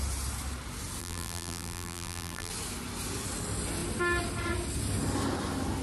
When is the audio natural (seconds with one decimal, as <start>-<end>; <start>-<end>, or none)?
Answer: 0.0-1.0; 2.5-5.8